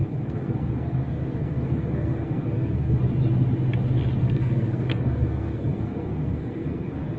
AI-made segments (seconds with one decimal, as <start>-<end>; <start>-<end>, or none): 0.0-3.0; 4.2-7.2